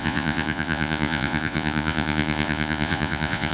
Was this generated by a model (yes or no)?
yes